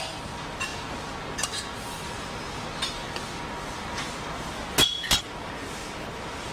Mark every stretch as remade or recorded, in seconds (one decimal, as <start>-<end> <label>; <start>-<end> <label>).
0.0-6.5 recorded